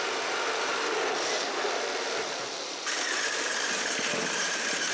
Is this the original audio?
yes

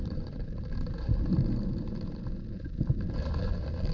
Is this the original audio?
no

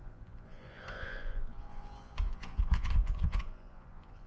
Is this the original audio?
no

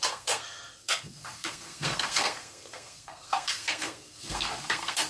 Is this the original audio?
no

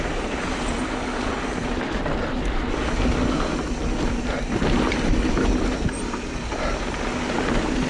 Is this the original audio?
yes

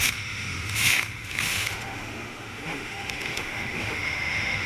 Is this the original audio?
no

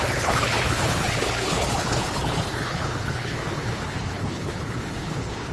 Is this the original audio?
no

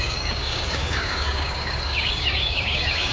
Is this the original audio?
no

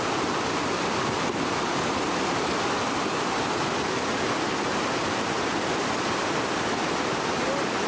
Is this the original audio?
yes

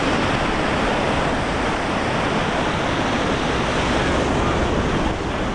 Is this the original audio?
yes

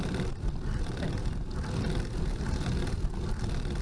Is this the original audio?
yes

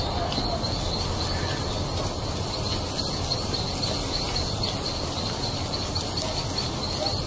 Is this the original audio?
yes